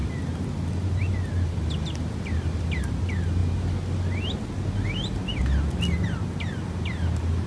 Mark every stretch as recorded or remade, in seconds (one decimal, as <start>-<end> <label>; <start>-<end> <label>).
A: 0.0-7.5 recorded